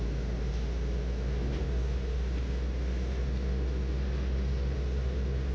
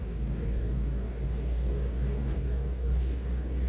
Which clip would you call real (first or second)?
first